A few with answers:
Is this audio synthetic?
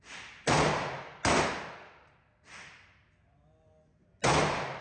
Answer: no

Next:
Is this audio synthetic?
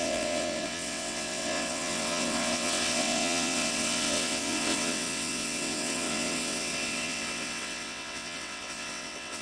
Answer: yes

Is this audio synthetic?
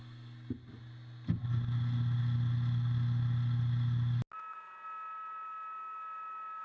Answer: no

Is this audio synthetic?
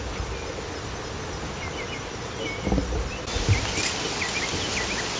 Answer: no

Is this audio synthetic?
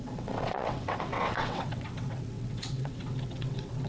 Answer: yes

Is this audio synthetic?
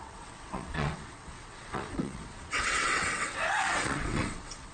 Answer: yes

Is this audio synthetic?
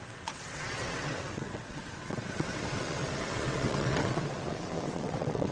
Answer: yes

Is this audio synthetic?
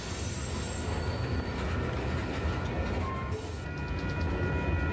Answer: no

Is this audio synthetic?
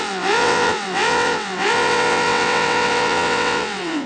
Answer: yes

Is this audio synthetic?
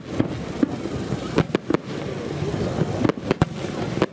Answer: no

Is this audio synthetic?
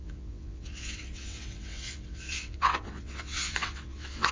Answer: yes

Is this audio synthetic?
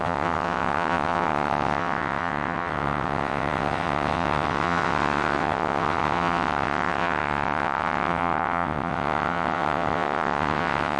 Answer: yes